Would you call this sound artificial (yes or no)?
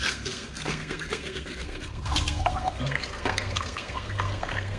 yes